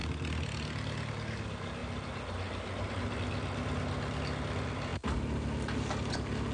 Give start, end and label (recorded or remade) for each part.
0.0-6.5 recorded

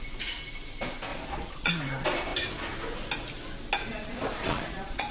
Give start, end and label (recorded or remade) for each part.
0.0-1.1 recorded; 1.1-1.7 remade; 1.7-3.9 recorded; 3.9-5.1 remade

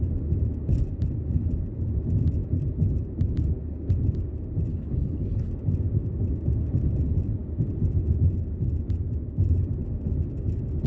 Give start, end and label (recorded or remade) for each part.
0.0-4.7 recorded; 4.7-5.5 remade; 5.5-10.9 recorded

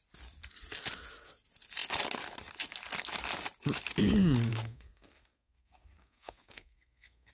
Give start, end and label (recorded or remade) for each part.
0.0-4.5 recorded; 4.5-7.3 remade